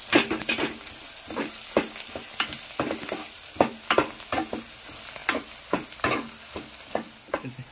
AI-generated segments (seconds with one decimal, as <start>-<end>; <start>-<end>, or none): none